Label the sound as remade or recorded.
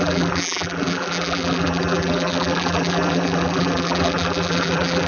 remade